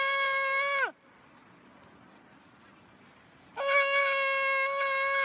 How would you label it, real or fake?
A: real